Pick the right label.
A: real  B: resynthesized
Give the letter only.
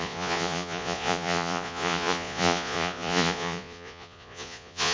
B